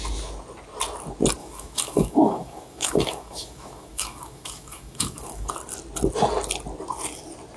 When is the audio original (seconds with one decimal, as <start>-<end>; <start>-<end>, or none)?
0.0-1.4; 5.5-7.6